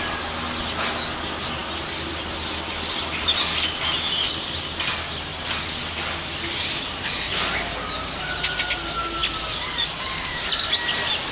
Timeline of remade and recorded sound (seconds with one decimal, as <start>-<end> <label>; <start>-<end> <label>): 0.0-9.2 recorded; 9.2-11.3 remade